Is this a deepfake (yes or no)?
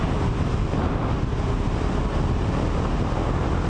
no